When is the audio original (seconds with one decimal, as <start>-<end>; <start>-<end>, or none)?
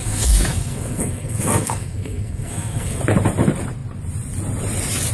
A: 3.0-5.1